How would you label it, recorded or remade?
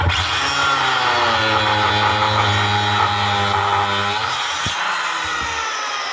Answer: recorded